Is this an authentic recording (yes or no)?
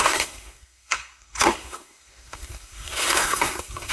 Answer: no